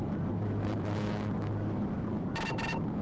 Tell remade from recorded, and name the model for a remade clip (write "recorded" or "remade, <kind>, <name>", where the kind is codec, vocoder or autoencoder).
remade, autoencoder, DAC-VAE